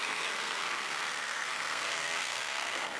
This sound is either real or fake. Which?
fake